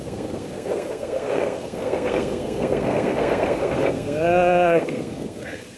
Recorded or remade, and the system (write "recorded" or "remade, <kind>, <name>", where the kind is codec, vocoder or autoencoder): remade, codec, SNAC